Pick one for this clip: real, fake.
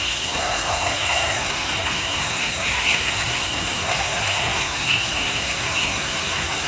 fake